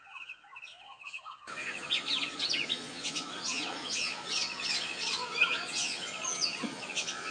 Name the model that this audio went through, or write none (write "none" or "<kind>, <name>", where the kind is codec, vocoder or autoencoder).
vocoder, Vocos